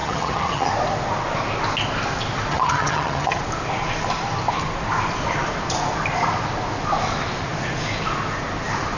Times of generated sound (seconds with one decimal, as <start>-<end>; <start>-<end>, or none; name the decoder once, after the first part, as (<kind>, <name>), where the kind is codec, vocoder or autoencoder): 0.0-0.7 (vocoder, HiFi-GAN); 2.5-3.4